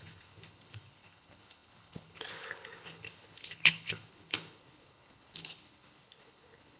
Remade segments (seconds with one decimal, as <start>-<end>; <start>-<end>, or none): 0.0-6.8